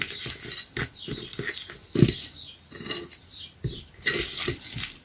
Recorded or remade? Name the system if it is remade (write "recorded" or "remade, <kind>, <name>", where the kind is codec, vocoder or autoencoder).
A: recorded